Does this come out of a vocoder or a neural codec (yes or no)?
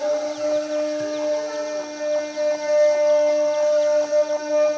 no